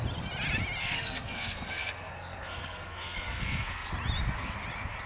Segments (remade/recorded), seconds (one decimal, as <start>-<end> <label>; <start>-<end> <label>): 0.0-0.8 recorded; 0.8-3.9 remade; 3.9-5.1 recorded